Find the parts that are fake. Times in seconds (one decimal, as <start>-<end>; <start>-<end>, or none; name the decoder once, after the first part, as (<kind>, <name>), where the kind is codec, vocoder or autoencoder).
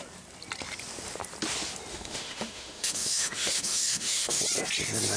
1.9-4.4 (autoencoder, DAC-VAE)